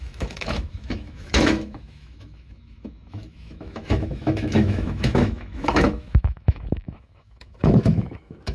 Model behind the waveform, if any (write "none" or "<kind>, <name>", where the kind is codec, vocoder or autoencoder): autoencoder, DAC-VAE